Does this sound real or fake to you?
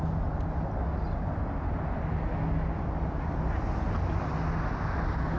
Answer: real